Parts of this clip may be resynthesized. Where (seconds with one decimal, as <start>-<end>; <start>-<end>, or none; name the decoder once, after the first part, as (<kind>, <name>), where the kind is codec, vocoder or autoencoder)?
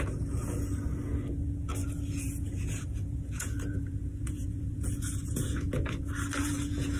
1.8-6.0 (vocoder, Vocos); 6.4-7.0